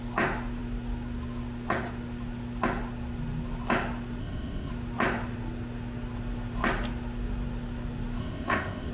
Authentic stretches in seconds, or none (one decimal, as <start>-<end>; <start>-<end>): 0.0-4.2; 4.7-8.2